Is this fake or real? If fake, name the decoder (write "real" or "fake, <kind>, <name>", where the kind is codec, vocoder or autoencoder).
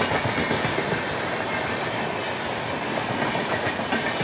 real